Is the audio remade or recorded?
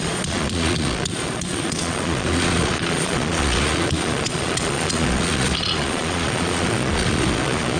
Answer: remade